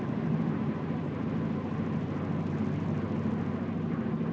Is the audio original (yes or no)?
yes